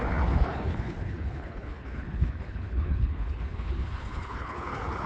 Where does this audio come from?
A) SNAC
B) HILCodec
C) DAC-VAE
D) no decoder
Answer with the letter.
B